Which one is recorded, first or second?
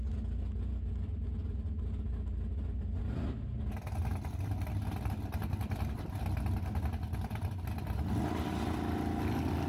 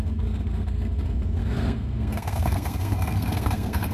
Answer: first